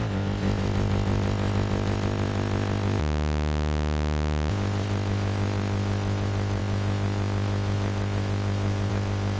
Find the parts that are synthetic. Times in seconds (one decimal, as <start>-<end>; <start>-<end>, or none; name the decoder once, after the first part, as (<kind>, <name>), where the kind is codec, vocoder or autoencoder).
0.0-3.0 (codec, ZipCodec); 4.5-9.4